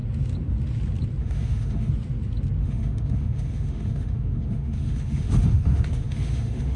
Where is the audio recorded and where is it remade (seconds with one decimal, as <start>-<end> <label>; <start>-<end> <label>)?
0.0-1.2 recorded; 1.2-1.9 remade; 1.9-2.6 recorded; 2.6-6.8 remade